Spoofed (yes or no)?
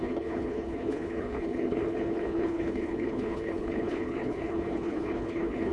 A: yes